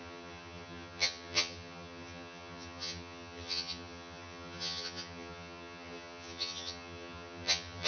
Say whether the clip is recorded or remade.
remade